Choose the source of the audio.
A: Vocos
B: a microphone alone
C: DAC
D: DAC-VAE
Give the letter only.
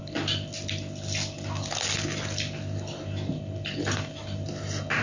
B